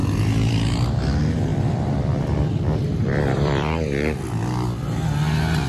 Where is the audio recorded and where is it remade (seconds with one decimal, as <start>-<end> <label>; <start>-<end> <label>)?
0.0-0.5 remade; 0.5-1.5 recorded; 1.5-2.2 remade; 2.2-2.9 recorded; 2.9-4.2 remade; 4.2-5.7 recorded